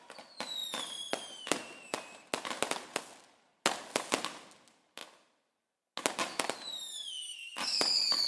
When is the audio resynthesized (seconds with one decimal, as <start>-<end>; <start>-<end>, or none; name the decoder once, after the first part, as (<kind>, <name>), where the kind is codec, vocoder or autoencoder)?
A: none